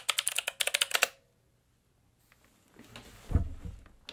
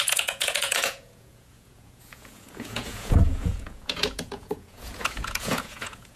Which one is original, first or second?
first